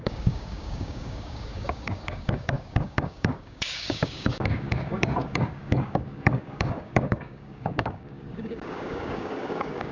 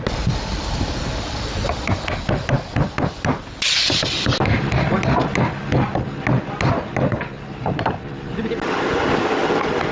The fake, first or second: first